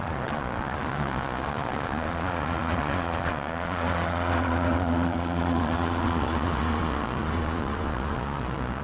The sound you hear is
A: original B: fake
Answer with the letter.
B